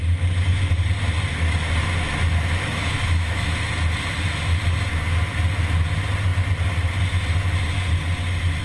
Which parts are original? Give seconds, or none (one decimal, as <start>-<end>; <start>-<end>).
0.0-2.6; 3.7-8.6